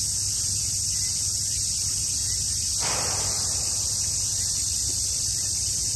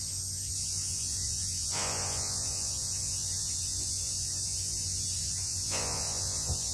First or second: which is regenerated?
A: second